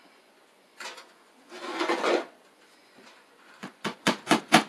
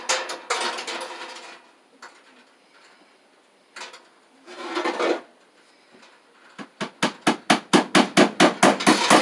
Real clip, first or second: second